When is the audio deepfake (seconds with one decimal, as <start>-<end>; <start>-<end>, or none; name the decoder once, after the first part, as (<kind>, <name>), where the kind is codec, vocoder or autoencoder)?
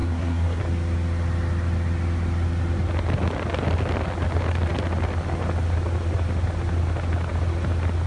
0.0-0.6 (codec, SNAC)